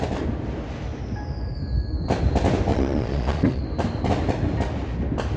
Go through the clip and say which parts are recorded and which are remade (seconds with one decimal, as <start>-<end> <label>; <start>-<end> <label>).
0.0-2.7 recorded; 2.7-3.6 remade; 3.6-5.4 recorded